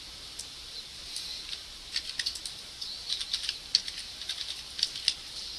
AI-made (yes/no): no